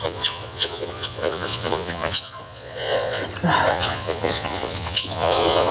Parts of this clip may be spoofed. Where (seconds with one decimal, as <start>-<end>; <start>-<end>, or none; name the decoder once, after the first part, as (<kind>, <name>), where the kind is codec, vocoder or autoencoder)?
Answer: 0.0-3.2 (vocoder, Vocos); 3.7-5.7